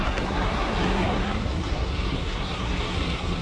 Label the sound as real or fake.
fake